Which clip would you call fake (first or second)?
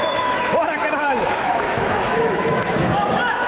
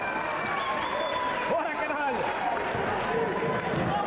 first